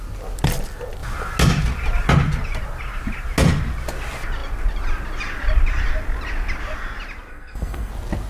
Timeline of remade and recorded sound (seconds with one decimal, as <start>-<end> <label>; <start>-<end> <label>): 0.0-7.3 recorded; 7.3-7.9 remade; 7.9-8.3 recorded